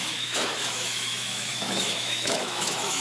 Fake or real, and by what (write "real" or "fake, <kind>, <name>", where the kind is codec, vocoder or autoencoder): fake, autoencoder, DAC-VAE